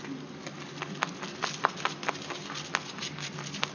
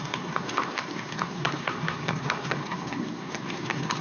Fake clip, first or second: second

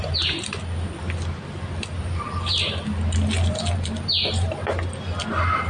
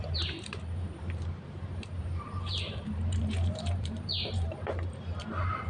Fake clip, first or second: second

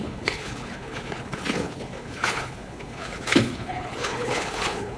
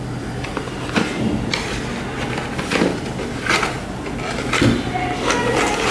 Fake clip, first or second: first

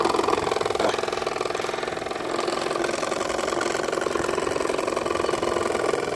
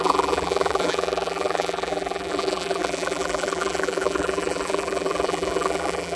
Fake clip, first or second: second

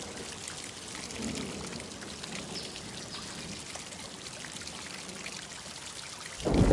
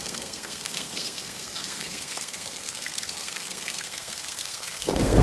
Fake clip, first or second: second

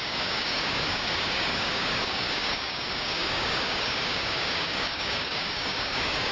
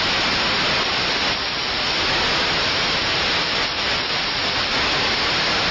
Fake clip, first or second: first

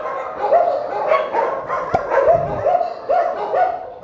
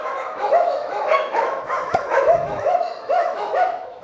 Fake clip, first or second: second